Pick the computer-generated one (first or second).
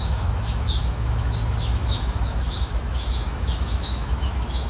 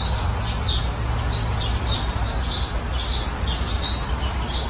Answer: first